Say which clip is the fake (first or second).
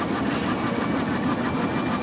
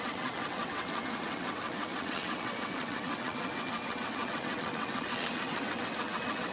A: second